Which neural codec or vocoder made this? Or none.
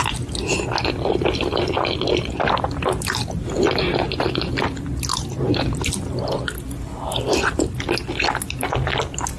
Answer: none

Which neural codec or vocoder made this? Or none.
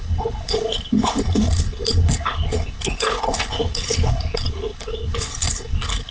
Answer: codec, HILCodec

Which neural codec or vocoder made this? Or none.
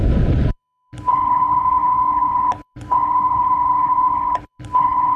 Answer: codec, HILCodec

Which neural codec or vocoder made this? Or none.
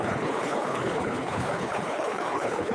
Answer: codec, HILCodec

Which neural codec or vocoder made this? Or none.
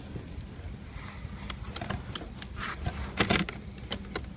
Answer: none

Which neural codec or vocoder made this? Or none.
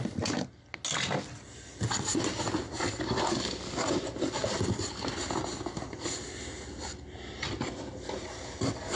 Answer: none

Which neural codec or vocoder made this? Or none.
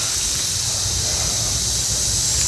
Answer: none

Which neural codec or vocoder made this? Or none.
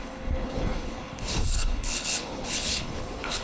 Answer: codec, HILCodec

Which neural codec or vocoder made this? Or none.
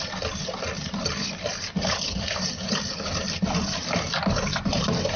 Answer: none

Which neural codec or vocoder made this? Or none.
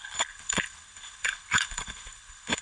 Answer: codec, HILCodec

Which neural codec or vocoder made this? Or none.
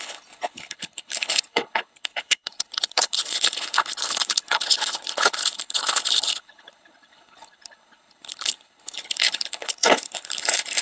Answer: codec, HILCodec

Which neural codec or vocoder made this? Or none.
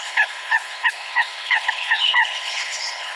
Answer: codec, HILCodec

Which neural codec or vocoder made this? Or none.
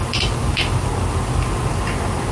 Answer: none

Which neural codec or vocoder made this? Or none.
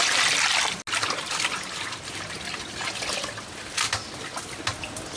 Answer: none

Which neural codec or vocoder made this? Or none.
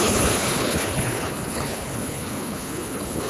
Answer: codec, HILCodec